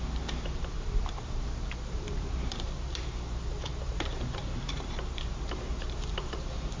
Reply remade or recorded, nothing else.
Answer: remade